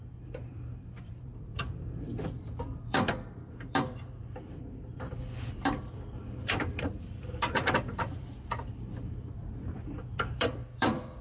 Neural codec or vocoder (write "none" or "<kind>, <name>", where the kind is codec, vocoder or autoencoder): vocoder, BigVGAN v2